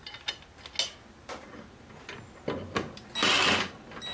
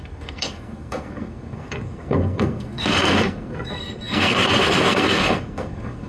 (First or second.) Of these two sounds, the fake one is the second